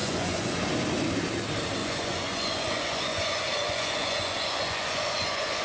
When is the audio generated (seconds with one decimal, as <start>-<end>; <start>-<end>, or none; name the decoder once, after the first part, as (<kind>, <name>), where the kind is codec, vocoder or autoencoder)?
0.0-0.6 (vocoder, Vocos); 1.8-5.6